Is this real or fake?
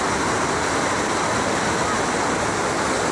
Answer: real